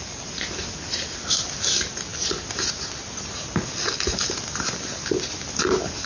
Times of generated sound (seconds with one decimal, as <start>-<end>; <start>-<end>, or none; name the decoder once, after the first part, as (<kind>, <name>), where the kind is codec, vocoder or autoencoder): none